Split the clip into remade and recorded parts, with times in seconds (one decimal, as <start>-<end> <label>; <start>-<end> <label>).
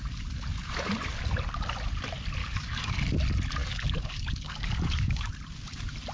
0.0-2.4 recorded; 2.4-3.0 remade; 3.0-3.6 recorded; 3.6-5.3 remade; 5.3-6.1 recorded